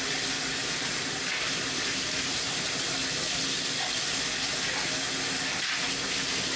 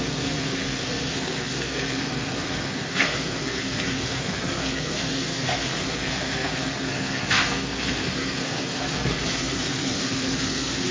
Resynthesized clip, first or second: second